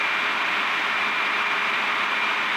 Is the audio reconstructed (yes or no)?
no